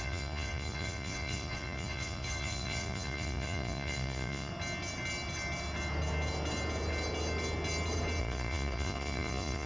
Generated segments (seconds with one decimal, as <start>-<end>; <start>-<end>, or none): 0.0-4.5; 8.2-9.7